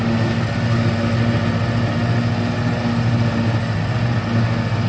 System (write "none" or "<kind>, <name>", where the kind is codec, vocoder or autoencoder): none